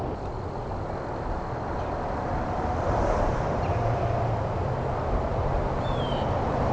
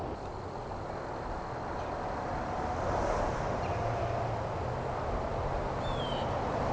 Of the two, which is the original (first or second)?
second